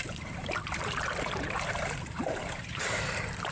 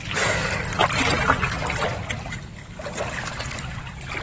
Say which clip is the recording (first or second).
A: second